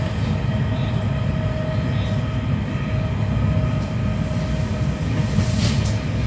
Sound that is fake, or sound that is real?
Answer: real